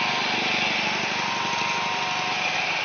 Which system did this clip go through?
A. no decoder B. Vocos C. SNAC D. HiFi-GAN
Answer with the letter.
A